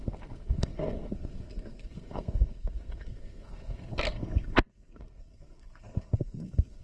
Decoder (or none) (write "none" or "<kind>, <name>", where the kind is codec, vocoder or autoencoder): codec, SNAC